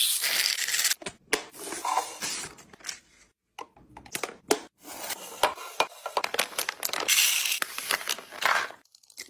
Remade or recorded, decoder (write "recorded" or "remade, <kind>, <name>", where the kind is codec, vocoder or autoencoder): recorded